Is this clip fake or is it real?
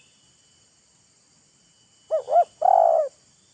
real